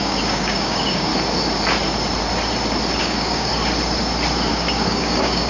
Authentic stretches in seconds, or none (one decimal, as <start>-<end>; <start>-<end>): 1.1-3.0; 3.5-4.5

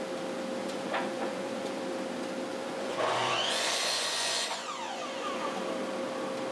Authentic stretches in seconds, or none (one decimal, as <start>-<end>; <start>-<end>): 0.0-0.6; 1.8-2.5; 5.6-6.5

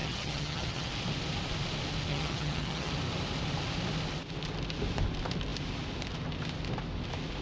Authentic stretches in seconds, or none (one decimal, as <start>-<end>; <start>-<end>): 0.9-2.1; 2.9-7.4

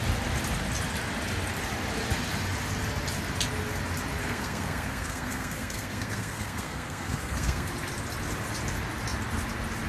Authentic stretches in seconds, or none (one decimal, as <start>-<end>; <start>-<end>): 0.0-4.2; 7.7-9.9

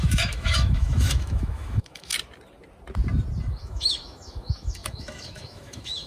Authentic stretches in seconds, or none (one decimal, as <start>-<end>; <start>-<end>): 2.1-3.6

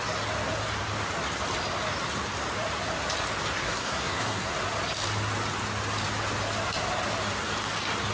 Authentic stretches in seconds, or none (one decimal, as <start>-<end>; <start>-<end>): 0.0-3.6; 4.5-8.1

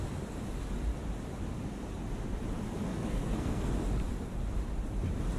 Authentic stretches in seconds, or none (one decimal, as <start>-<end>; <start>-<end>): 0.0-2.9; 3.7-5.4

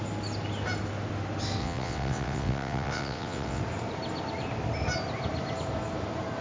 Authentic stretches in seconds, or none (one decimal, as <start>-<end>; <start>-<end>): 0.0-1.6; 3.6-6.4